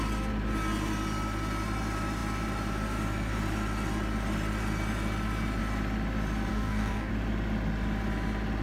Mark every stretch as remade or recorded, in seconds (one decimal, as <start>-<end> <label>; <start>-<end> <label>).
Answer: 0.0-6.5 recorded; 6.5-7.1 remade; 7.1-8.6 recorded